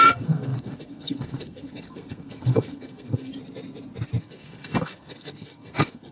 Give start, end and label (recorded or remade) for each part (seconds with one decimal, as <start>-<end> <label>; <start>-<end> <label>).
0.0-3.3 remade; 3.3-4.2 recorded; 4.2-6.1 remade